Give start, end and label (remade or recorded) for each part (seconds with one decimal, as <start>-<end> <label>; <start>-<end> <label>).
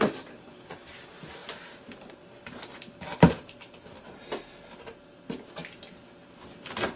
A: 0.0-1.4 recorded; 1.4-2.3 remade; 2.3-3.1 recorded; 3.1-3.8 remade; 3.8-7.0 recorded